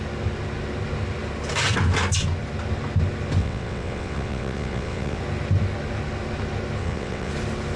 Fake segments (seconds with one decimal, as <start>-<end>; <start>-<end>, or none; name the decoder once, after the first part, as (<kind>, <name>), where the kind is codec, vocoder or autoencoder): 3.4-5.2 (vocoder, WaveNeXt); 6.8-7.3